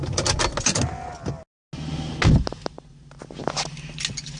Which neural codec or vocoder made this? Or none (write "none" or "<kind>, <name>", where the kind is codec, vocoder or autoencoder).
none